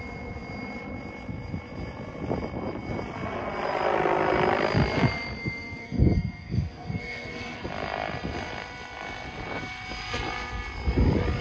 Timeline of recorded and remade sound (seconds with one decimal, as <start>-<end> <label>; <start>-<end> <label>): 0.0-5.8 recorded; 5.8-7.6 remade; 7.6-11.4 recorded